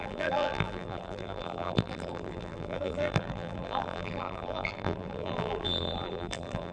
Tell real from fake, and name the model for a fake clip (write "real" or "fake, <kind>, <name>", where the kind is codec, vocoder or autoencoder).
fake, vocoder, BigVGAN v2